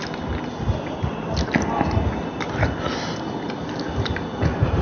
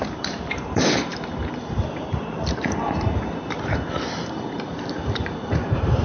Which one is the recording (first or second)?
first